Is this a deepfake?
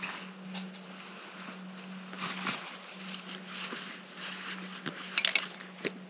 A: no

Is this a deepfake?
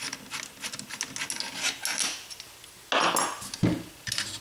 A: no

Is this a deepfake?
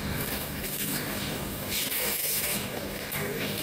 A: yes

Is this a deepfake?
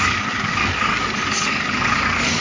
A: yes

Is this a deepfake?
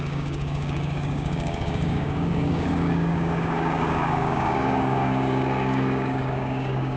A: yes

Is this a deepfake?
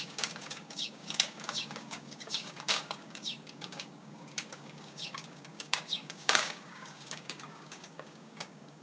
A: yes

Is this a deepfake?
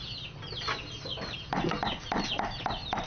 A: no